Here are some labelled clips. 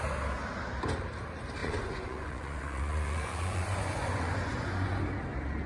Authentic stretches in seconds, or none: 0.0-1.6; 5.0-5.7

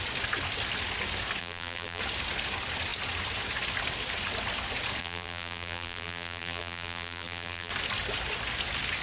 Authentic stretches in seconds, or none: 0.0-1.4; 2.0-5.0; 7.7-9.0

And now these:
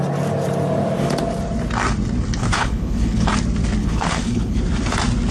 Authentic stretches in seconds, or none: 0.0-2.4; 3.3-3.8; 4.6-5.3

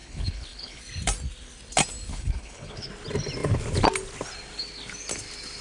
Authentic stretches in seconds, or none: 0.8-2.1; 2.9-5.6